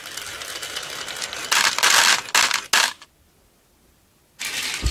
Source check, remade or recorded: recorded